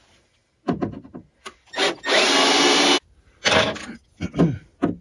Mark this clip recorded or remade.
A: recorded